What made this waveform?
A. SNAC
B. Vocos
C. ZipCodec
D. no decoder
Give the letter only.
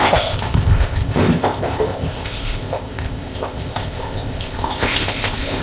C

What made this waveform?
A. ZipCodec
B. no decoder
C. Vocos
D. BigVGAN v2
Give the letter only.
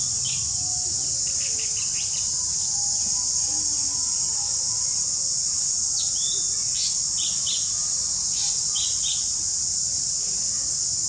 B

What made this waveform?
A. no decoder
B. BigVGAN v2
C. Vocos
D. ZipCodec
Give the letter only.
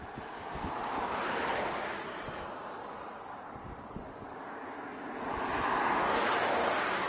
A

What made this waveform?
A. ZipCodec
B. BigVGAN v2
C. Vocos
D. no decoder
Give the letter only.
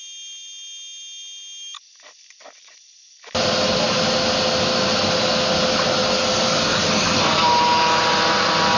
D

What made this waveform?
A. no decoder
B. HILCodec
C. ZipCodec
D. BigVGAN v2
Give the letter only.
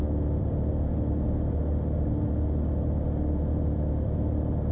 A